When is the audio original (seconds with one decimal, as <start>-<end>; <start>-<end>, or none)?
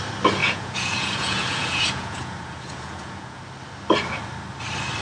0.0-0.4; 3.4-5.0